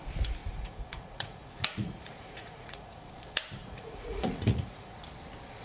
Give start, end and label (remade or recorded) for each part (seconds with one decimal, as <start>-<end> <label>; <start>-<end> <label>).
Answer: 0.0-0.4 recorded; 0.4-3.1 remade; 3.1-3.6 recorded; 3.6-5.0 remade; 5.0-5.6 recorded